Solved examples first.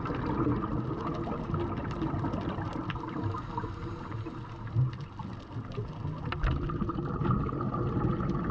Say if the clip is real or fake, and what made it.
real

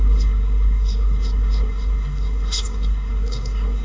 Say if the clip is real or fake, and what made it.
fake, codec, SNAC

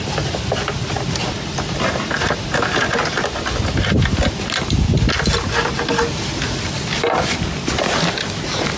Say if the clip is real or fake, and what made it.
real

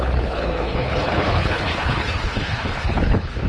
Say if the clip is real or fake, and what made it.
fake, codec, HILCodec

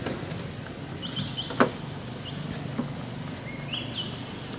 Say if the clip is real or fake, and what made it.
real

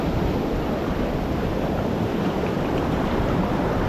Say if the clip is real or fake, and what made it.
fake, vocoder, BigVGAN v2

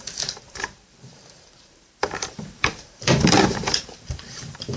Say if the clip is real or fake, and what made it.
fake, vocoder, BigVGAN v2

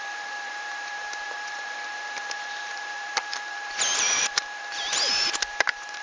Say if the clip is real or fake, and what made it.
fake, vocoder, BigVGAN v2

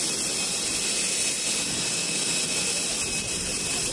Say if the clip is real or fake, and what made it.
real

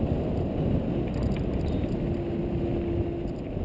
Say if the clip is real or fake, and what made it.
real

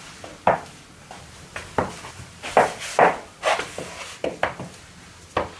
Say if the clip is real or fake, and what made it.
real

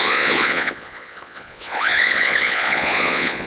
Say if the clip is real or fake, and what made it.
fake, vocoder, Vocos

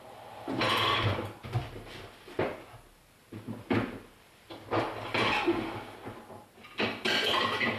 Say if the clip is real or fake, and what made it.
real